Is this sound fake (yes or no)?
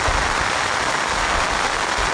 no